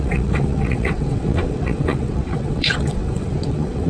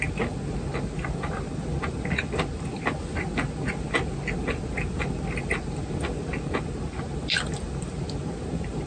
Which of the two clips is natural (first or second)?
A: second